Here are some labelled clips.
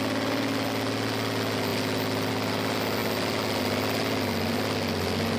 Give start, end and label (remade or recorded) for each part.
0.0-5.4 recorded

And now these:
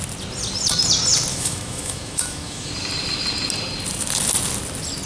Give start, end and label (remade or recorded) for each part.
0.0-1.3 recorded; 1.3-2.7 remade; 2.7-5.1 recorded

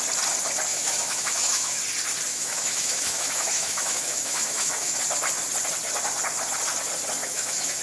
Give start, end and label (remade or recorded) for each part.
0.0-0.7 recorded; 0.7-1.8 remade; 1.8-2.3 recorded; 2.3-5.0 remade; 5.0-7.2 recorded; 7.2-7.8 remade

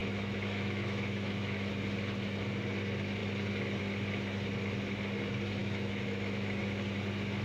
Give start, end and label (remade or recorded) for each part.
0.0-1.7 remade; 1.7-5.6 recorded; 5.6-6.6 remade; 6.6-7.4 recorded

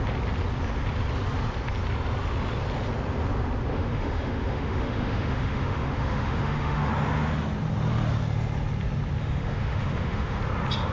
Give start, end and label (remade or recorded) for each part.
0.0-3.7 recorded; 3.7-6.9 remade; 6.9-9.2 recorded; 9.2-10.4 remade; 10.4-10.9 recorded

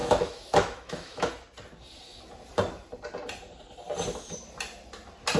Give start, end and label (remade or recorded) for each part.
0.0-1.3 remade; 1.3-5.4 recorded